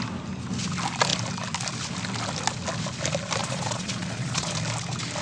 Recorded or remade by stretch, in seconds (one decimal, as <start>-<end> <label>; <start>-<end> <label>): 0.0-3.4 recorded; 3.4-4.5 remade; 4.5-5.2 recorded